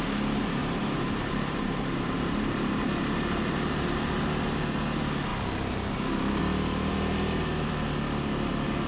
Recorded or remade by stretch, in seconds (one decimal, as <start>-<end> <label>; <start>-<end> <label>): 0.0-0.6 recorded; 0.6-4.0 remade; 4.0-8.9 recorded